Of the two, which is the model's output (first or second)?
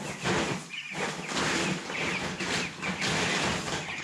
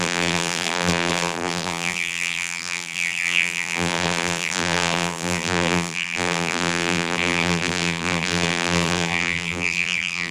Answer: second